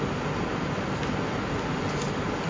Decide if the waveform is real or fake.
real